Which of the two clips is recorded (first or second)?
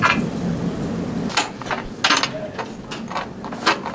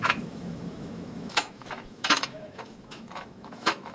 first